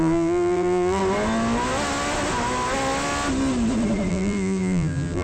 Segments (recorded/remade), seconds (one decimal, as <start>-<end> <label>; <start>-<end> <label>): 0.0-1.0 remade; 1.0-4.1 recorded; 4.1-5.2 remade